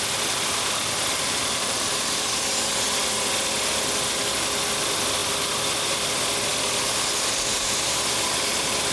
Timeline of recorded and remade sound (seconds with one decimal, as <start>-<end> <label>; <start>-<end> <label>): 0.0-1.1 recorded; 1.1-2.5 remade; 2.5-8.9 recorded